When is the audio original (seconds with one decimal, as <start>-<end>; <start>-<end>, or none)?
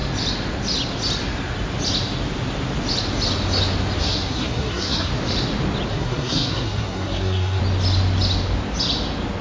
0.0-4.0; 5.1-5.9; 7.6-9.4